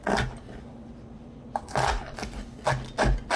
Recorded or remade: recorded